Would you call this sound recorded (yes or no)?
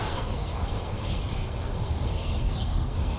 no